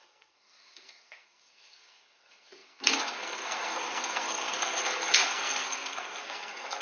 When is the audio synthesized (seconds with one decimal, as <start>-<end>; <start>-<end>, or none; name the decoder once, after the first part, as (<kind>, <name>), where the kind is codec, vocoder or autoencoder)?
0.0-6.8 (codec, SNAC)